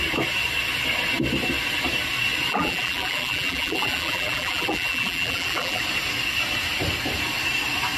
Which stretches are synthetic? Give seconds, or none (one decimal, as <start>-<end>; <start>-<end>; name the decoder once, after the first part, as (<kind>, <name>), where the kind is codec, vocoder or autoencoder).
2.5-5.8 (vocoder, BigVGAN v2)

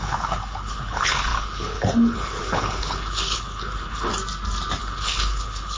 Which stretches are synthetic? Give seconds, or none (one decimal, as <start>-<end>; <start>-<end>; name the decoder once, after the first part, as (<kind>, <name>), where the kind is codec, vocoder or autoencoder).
0.0-4.1 (codec, HILCodec); 4.8-5.8

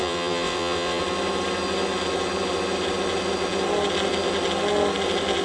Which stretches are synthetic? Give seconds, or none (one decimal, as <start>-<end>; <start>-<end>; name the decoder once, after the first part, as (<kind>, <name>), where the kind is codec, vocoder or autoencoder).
0.0-1.0 (vocoder, WaveNeXt)

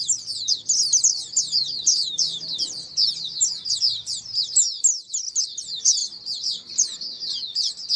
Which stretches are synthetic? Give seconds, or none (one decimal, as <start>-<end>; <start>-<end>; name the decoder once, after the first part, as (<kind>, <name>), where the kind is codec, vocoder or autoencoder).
none